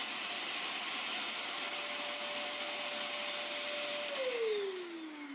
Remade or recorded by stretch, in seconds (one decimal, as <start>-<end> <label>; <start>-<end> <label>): 0.0-5.3 recorded